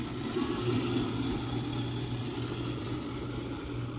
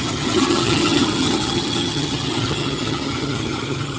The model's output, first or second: second